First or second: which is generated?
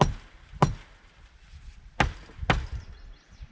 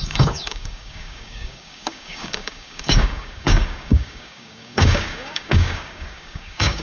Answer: second